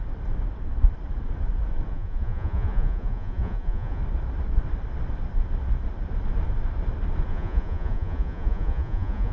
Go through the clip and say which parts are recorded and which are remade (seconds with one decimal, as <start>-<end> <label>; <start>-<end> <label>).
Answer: 0.0-1.9 recorded; 1.9-4.0 remade; 4.0-7.3 recorded; 7.3-9.3 remade